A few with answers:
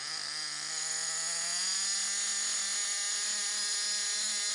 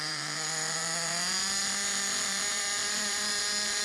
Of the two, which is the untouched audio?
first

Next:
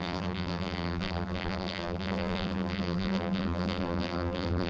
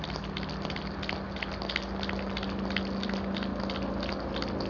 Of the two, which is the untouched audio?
second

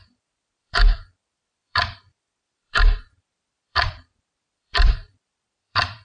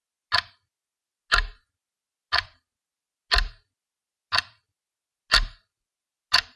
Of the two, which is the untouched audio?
second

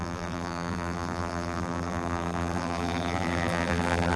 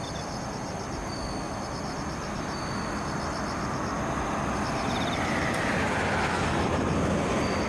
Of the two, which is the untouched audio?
second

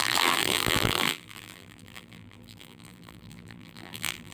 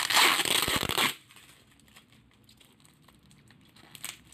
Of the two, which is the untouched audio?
second